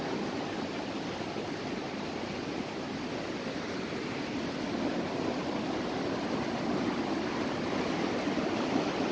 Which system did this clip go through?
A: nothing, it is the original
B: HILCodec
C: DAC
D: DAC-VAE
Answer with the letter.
A